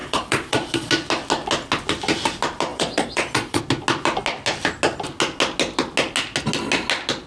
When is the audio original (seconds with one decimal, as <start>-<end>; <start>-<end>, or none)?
0.9-2.7; 3.6-7.3